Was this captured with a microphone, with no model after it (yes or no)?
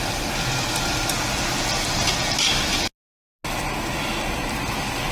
yes